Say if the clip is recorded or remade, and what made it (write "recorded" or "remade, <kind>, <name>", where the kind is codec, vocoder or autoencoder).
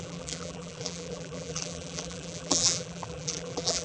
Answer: remade, vocoder, BigVGAN v2